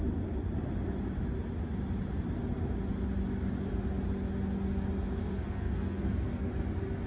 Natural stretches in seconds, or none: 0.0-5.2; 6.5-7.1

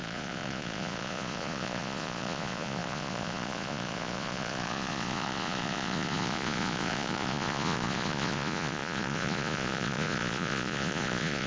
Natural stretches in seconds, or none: none

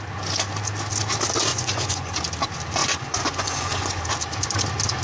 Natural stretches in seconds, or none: 0.0-1.5; 2.2-2.8; 4.0-5.0

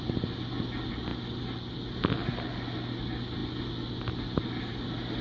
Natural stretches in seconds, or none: 0.0-5.2

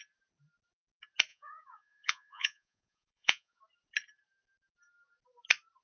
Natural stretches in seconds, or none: 0.0-1.3; 3.6-5.8

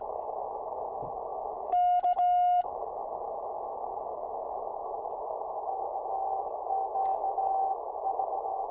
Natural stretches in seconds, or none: none

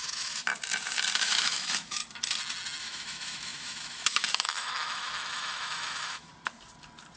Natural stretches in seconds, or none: 0.5-1.2; 2.0-2.8; 6.3-7.2

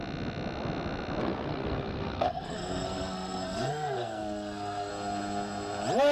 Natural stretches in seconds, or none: 0.0-1.2; 4.9-6.1